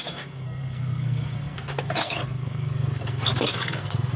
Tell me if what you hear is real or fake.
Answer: fake